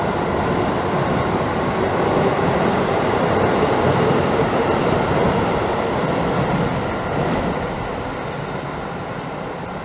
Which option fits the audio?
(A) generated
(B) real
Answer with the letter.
A